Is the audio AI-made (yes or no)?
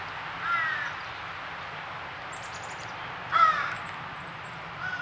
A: no